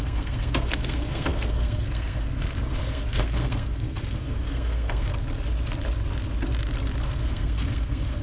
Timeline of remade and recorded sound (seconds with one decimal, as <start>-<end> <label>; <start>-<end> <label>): 0.0-5.1 remade; 5.1-7.0 recorded; 7.0-8.2 remade